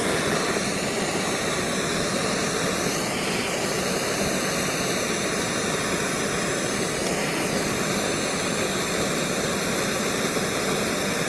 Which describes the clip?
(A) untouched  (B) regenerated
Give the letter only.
A